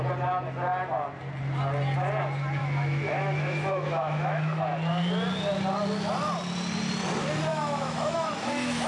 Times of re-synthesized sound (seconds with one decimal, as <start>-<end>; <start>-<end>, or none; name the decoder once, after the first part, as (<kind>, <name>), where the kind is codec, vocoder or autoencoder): 2.6-4.6 (autoencoder, DAC-VAE); 7.5-8.9